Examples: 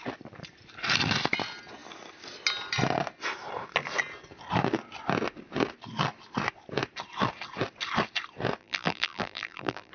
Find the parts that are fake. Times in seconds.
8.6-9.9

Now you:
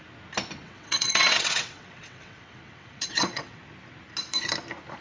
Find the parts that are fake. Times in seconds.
0.6-3.6